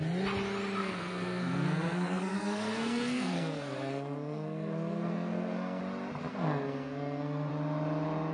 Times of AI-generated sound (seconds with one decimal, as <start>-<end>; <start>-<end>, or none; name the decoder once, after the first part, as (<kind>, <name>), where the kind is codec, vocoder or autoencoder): 0.8-5.8 (codec, SNAC); 6.3-7.5